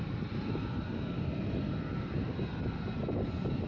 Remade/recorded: recorded